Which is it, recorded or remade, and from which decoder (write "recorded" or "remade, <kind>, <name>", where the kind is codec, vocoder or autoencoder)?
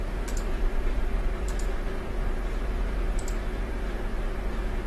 remade, vocoder, BigVGAN v2